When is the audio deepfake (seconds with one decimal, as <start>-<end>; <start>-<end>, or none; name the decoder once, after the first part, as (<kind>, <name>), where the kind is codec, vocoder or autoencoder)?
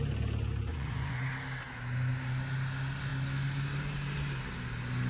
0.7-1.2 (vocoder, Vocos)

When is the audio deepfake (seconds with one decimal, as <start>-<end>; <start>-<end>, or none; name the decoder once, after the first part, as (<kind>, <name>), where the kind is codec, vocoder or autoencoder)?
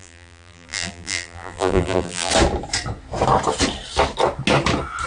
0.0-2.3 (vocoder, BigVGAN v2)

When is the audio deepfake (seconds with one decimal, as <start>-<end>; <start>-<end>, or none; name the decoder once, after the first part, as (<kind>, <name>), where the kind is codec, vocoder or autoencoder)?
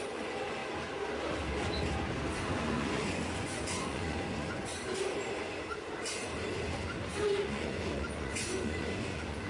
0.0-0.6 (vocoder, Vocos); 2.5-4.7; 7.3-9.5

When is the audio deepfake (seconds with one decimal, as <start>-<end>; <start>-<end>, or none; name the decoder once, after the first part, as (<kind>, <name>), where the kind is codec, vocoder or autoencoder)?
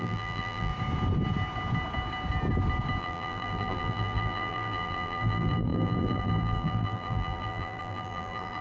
0.0-0.7 (vocoder, BigVGAN v2); 3.0-8.6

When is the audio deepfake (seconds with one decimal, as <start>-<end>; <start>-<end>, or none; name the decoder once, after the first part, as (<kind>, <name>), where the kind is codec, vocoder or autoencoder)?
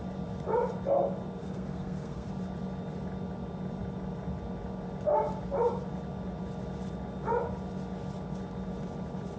1.4-2.3 (codec, SNAC)